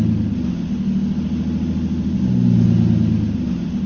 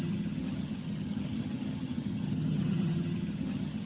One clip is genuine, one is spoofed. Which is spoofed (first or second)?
second